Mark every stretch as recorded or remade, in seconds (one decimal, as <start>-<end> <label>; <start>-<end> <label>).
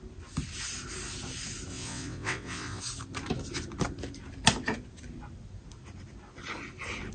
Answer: 0.0-1.7 recorded; 1.7-2.8 remade; 2.8-7.1 recorded